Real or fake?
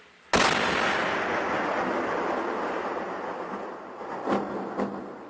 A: real